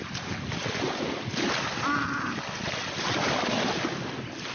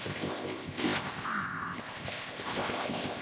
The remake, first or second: second